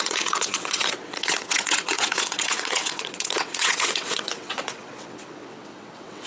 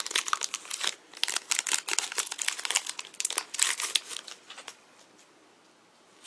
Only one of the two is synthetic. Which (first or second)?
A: first